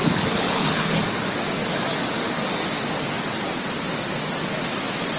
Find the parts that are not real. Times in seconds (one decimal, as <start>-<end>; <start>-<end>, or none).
0.0-1.0